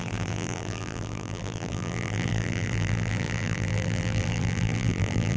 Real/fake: fake